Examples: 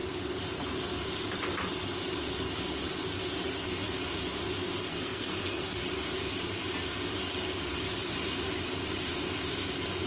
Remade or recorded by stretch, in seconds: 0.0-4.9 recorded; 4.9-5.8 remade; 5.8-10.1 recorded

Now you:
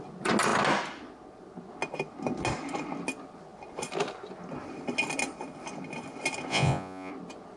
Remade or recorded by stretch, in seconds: 0.0-6.5 recorded; 6.5-7.1 remade; 7.1-7.6 recorded

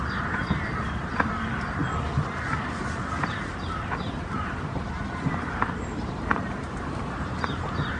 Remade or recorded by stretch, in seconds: 0.0-1.8 remade; 1.8-2.6 recorded; 2.6-8.0 remade

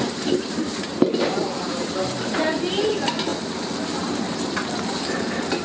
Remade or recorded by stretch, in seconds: 0.0-5.6 remade

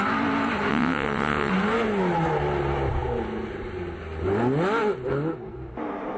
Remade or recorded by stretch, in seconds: 0.0-0.7 recorded; 0.7-1.5 remade; 1.5-6.2 recorded

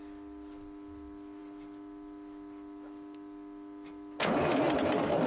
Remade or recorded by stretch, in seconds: 0.0-5.3 recorded

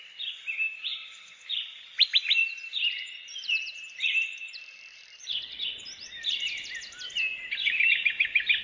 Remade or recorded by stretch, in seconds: 0.0-7.3 remade; 7.3-7.9 recorded; 7.9-8.6 remade